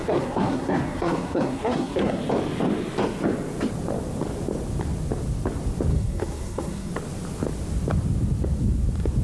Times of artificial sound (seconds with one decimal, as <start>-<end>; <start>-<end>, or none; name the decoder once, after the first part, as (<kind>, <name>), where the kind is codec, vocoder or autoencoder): 0.0-2.2 (codec, SNAC); 5.9-6.9